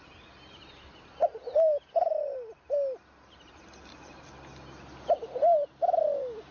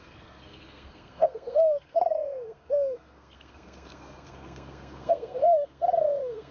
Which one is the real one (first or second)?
first